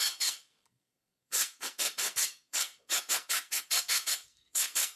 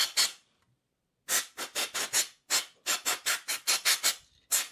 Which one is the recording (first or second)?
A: second